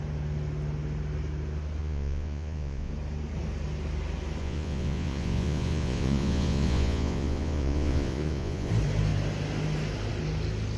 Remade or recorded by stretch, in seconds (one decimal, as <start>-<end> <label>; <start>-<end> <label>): 0.0-1.8 recorded; 1.8-2.9 remade; 2.9-4.4 recorded; 4.4-8.7 remade; 8.7-10.8 recorded